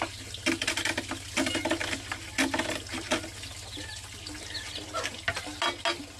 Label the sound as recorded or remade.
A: recorded